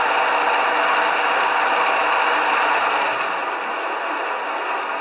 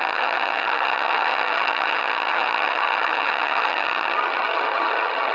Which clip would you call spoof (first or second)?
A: second